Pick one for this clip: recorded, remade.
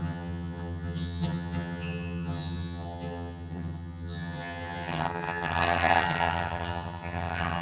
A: remade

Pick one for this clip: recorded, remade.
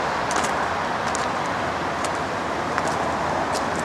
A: recorded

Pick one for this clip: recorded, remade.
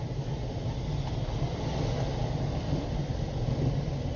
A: recorded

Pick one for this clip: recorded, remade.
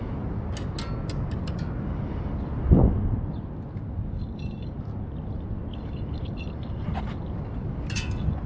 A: recorded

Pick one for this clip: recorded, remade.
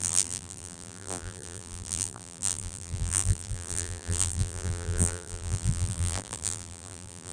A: remade